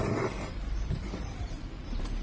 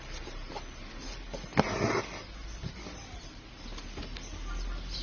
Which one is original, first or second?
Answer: second